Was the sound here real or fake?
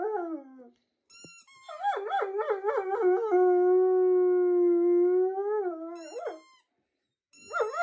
real